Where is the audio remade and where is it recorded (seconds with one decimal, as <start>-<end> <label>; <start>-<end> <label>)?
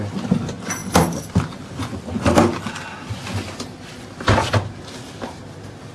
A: 0.0-5.9 recorded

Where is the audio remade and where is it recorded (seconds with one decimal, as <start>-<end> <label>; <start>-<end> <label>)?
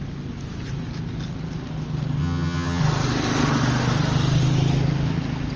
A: 0.0-2.2 recorded; 2.2-2.8 remade; 2.8-5.6 recorded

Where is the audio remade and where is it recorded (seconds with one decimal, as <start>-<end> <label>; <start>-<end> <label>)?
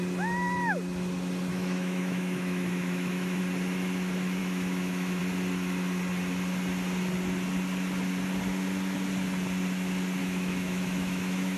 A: 0.0-1.5 recorded; 1.5-3.4 remade; 3.4-4.4 recorded; 4.4-5.2 remade; 5.2-10.2 recorded; 10.2-11.6 remade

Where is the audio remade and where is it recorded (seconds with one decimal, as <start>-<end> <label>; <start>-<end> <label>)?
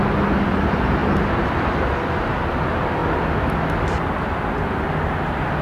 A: 0.0-1.0 recorded; 1.0-1.9 remade; 1.9-5.6 recorded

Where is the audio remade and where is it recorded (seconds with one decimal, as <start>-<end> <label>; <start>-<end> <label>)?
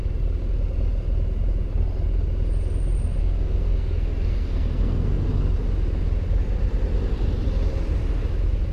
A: 0.0-3.2 recorded; 3.2-5.3 remade; 5.3-8.7 recorded